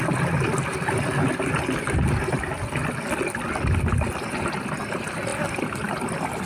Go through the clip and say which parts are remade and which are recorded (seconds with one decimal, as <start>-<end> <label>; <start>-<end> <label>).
0.0-6.5 recorded